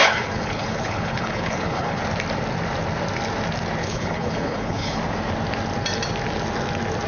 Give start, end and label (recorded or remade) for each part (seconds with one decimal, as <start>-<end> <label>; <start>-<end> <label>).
0.0-2.0 remade; 2.0-3.8 recorded; 3.8-5.0 remade; 5.0-7.1 recorded